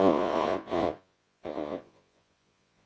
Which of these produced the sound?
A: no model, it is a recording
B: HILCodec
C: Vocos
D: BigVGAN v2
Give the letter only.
C